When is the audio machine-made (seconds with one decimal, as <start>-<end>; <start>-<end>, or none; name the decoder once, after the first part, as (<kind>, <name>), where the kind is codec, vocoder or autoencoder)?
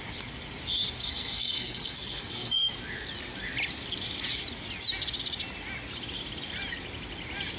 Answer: 1.0-2.7 (codec, SNAC)